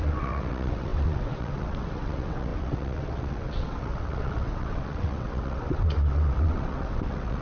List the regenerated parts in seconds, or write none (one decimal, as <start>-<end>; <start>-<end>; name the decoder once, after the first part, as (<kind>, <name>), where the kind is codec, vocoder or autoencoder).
0.0-7.4 (vocoder, WaveNeXt)